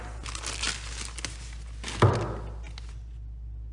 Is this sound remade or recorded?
recorded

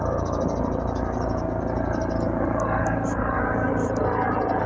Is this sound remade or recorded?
recorded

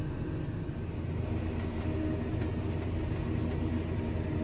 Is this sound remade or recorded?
recorded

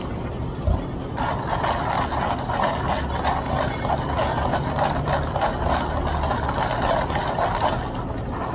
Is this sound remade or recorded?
recorded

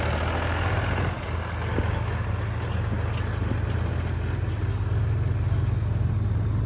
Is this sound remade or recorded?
recorded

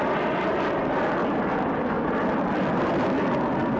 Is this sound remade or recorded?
recorded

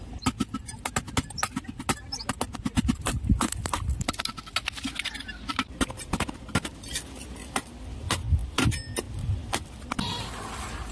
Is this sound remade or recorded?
recorded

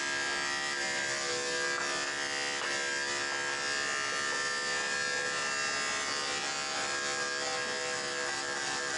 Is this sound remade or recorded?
recorded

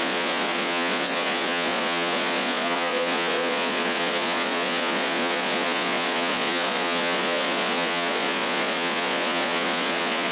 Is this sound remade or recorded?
remade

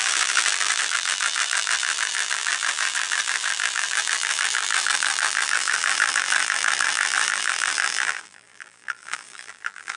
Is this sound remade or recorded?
remade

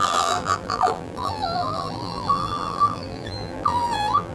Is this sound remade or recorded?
remade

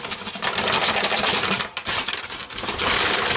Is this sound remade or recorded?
recorded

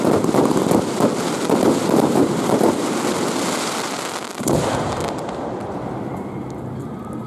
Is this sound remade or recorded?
remade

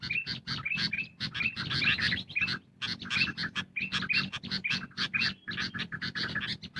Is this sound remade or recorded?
recorded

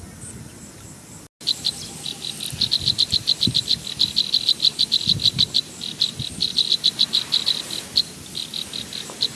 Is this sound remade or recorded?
recorded